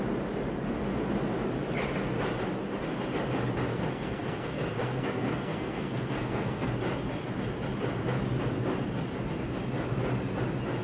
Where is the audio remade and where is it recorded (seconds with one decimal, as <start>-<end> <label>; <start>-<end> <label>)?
0.0-3.7 recorded; 3.7-6.7 remade; 6.7-10.8 recorded